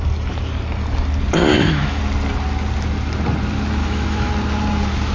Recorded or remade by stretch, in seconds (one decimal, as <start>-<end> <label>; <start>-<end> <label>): 0.0-1.5 recorded; 1.5-2.0 remade; 2.0-3.8 recorded; 3.8-4.3 remade; 4.3-5.1 recorded